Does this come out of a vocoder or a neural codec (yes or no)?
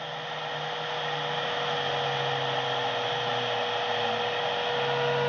no